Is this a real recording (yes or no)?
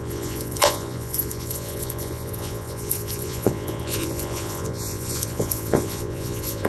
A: no